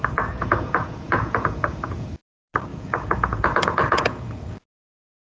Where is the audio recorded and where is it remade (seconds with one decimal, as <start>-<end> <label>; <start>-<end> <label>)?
0.0-2.1 remade; 2.1-2.7 recorded; 2.7-4.5 remade; 4.5-5.3 recorded